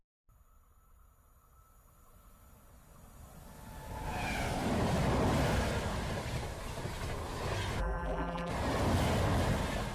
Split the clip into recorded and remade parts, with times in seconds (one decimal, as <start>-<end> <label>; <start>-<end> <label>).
0.0-7.8 recorded; 7.8-8.5 remade; 8.5-9.9 recorded